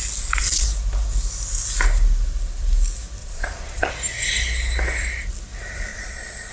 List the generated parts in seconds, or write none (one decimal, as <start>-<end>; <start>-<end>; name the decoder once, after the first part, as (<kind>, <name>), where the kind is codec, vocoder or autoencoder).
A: 3.2-3.9 (vocoder, Vocos); 5.9-6.5